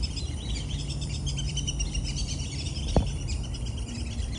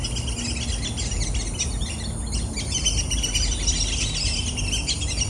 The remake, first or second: first